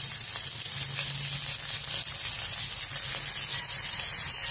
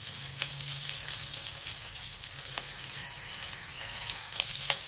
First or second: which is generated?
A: second